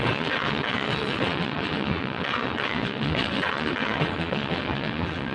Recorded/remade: remade